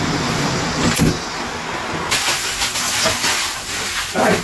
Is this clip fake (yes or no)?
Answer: no